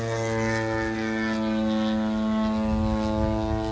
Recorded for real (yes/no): yes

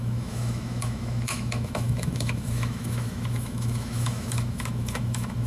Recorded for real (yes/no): no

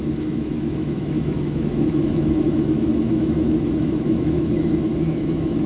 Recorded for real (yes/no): no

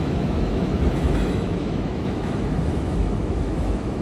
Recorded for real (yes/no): no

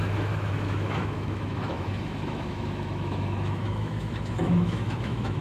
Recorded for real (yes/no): no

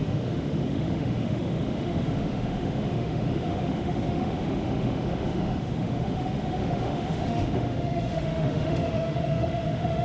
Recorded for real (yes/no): no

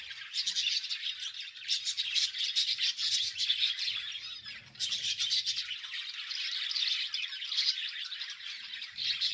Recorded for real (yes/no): yes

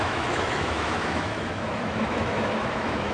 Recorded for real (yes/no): no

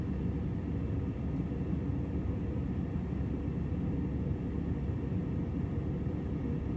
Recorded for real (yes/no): yes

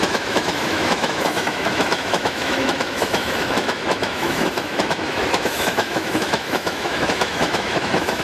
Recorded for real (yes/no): no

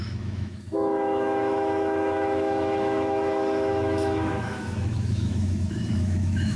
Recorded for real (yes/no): no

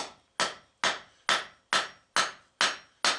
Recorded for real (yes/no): yes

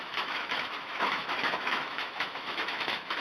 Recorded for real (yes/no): no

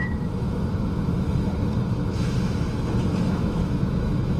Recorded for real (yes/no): no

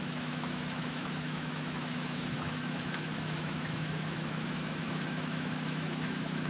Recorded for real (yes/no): no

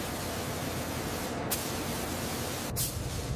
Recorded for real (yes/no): yes